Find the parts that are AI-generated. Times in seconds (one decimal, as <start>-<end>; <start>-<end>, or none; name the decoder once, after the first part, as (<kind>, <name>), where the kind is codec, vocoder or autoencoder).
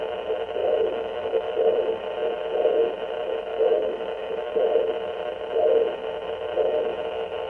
0.6-2.0 (autoencoder, DAC-VAE); 3.5-4.5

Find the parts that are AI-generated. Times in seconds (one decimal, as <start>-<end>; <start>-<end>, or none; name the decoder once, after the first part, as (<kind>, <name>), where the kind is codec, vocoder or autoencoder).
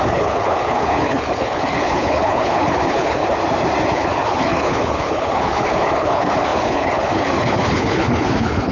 0.0-3.2 (codec, HILCodec); 3.9-8.7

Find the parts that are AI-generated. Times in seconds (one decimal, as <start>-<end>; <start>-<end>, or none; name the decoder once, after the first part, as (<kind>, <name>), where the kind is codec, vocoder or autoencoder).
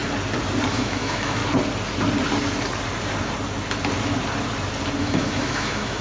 0.7-1.4 (autoencoder, DAC-VAE); 5.0-6.0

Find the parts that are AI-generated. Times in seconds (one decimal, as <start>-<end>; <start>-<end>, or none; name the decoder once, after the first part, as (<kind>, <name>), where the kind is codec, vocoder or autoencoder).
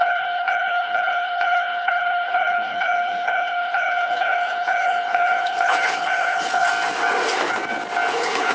0.0-6.7 (codec, HILCodec); 8.1-8.5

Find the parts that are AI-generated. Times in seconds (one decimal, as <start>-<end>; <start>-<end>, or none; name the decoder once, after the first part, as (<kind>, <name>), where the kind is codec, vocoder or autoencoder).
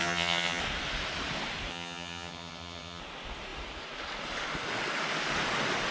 0.0-0.6 (vocoder, HiFi-GAN); 1.7-3.0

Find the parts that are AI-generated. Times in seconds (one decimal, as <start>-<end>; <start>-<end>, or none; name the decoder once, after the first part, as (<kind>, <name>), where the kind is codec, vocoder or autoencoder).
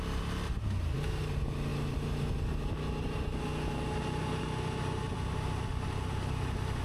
none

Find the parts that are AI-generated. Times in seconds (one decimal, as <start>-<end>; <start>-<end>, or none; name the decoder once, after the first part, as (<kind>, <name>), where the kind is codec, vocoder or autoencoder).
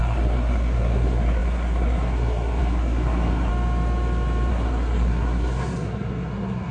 0.0-3.5 (codec, SNAC); 4.5-6.7